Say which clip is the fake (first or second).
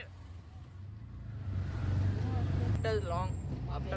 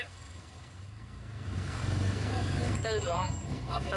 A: second